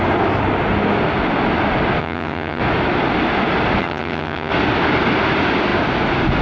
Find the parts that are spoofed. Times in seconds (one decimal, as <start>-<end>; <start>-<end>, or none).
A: 2.0-2.6; 3.8-4.5